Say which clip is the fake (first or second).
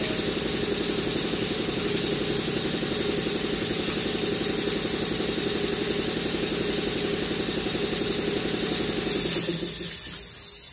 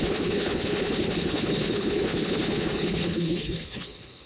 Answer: second